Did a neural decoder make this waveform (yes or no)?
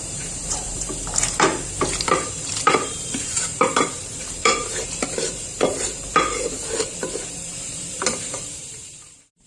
yes